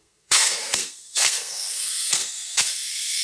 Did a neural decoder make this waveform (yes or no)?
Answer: yes